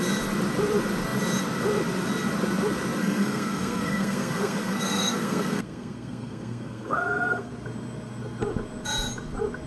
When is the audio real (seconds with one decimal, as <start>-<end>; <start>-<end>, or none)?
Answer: 0.0-3.0; 7.5-9.7